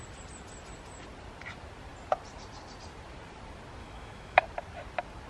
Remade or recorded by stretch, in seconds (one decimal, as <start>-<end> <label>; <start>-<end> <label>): 0.0-3.8 recorded; 3.8-4.4 remade; 4.4-5.3 recorded